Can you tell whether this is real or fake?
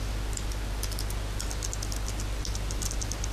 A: real